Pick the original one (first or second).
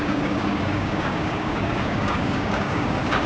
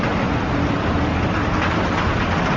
second